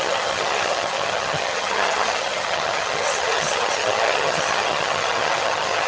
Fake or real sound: fake